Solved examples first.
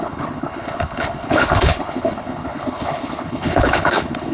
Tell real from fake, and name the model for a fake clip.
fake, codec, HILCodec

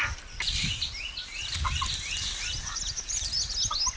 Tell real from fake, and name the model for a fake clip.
real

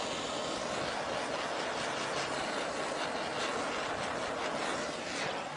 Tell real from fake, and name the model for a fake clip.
real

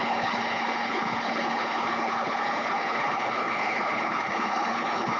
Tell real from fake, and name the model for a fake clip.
fake, codec, HILCodec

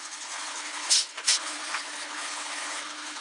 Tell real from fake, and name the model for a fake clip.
fake, codec, HILCodec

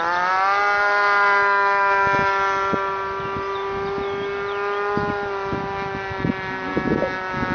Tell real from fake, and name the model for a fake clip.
real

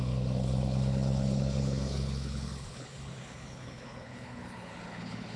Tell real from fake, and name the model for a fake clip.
fake, codec, HILCodec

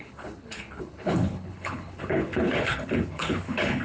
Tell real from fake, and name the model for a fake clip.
fake, codec, HILCodec